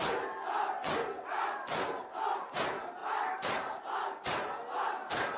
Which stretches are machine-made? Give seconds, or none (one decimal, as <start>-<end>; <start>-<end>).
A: 3.0-3.8